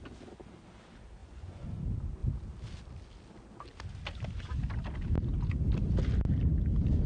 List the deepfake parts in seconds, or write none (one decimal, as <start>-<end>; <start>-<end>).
1.2-1.8